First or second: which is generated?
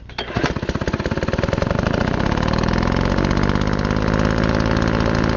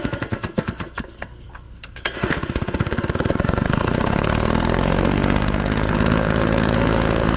second